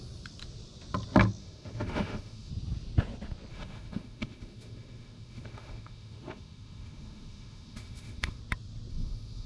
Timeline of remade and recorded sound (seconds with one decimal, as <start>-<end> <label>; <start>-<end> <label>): 0.0-1.4 recorded; 1.4-2.5 remade; 2.5-3.5 recorded; 3.5-8.4 remade; 8.4-8.9 recorded; 8.9-9.5 remade